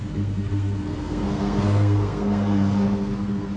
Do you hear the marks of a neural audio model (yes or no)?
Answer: yes